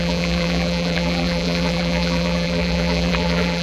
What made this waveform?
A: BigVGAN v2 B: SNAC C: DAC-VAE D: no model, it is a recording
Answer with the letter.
A